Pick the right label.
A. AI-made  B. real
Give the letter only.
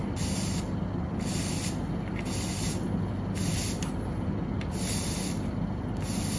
B